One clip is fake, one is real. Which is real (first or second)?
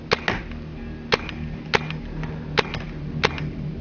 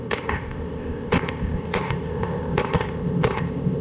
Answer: first